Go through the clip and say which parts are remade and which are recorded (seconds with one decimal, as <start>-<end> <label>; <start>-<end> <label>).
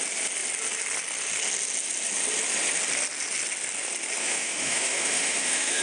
0.0-4.2 recorded; 4.2-5.8 remade